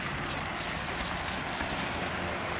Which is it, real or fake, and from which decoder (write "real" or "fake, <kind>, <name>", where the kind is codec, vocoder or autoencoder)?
real